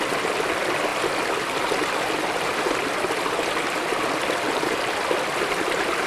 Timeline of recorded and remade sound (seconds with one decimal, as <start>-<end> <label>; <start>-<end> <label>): 0.0-6.1 recorded